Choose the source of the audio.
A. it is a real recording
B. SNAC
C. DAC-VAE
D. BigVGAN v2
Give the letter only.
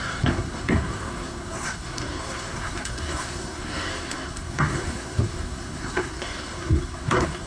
B